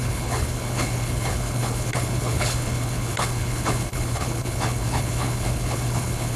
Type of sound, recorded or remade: remade